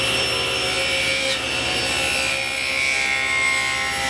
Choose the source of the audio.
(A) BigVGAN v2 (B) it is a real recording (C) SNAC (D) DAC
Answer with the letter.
B